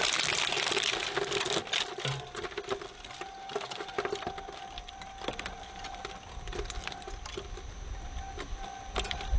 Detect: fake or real real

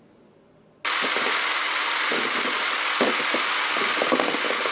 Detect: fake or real real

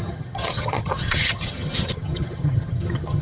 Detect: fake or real fake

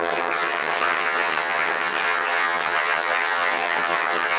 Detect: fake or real fake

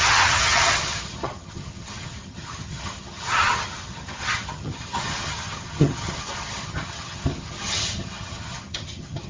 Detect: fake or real fake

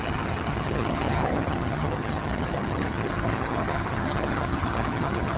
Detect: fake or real fake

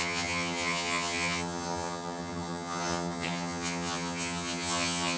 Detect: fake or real fake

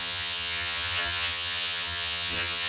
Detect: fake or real fake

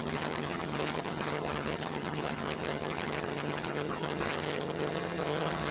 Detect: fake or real fake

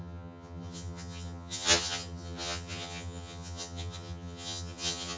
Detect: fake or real fake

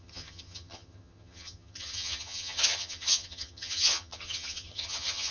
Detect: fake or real fake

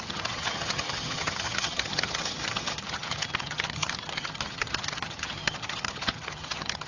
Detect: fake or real fake